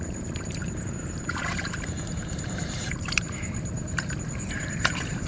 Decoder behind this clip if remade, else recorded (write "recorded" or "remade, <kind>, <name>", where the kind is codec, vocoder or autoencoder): remade, vocoder, BigVGAN v2